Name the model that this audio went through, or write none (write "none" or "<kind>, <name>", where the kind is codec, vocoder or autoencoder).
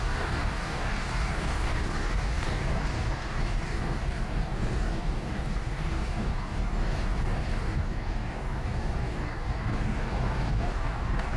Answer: codec, DAC